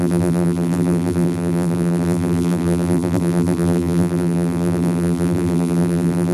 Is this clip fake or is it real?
fake